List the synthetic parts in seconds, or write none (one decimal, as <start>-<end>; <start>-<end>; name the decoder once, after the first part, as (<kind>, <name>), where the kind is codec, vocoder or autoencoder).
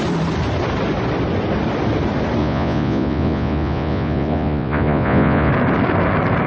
2.4-5.5 (vocoder, Vocos)